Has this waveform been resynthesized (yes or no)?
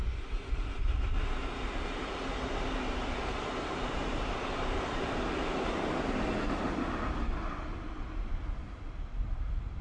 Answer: no